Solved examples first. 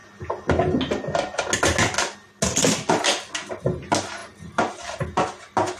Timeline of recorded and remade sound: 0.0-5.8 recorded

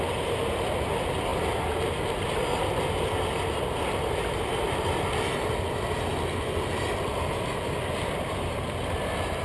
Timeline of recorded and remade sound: 0.0-9.4 recorded

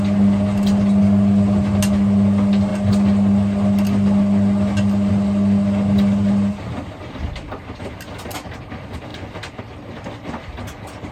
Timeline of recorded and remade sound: 0.0-11.1 recorded

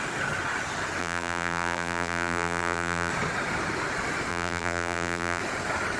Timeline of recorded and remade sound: 0.0-1.0 recorded; 1.0-3.1 remade; 3.1-4.3 recorded; 4.3-5.4 remade; 5.4-6.0 recorded

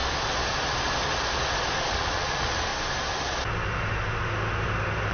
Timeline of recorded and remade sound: 0.0-1.9 recorded; 1.9-2.7 remade; 2.7-5.1 recorded